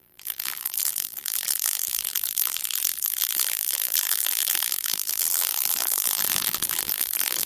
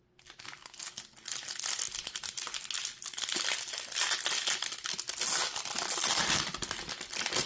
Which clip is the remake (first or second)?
first